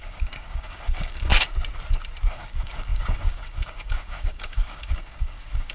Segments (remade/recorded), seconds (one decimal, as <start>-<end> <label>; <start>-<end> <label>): 0.0-1.3 remade; 1.3-2.3 recorded; 2.3-5.7 remade